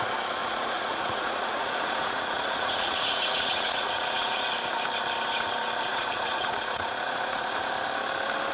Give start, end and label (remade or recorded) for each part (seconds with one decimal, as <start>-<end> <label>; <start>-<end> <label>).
0.0-0.4 recorded; 0.4-4.5 remade; 4.5-5.9 recorded; 5.9-7.5 remade; 7.5-8.5 recorded